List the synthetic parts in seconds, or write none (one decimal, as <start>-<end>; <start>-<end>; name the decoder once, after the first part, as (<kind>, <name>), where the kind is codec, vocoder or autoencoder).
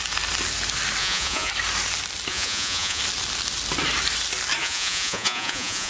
1.0-1.5 (vocoder, Vocos); 2.3-3.0; 4.6-5.9